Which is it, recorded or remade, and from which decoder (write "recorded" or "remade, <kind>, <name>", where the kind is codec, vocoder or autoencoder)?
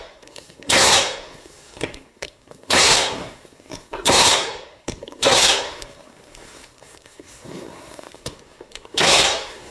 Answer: remade, codec, SNAC